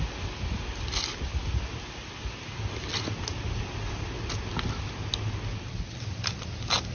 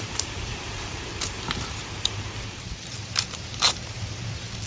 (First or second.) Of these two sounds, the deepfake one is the second